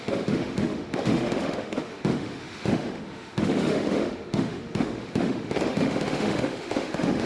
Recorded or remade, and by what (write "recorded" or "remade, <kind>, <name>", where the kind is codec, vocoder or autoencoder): remade, autoencoder, DAC-VAE